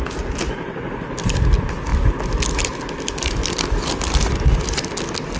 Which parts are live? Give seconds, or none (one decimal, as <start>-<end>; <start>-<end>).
0.0-5.4